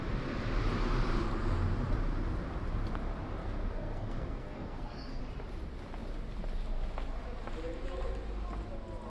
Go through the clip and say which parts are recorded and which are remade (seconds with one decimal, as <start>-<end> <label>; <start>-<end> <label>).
0.0-3.4 recorded; 3.4-5.2 remade; 5.2-9.1 recorded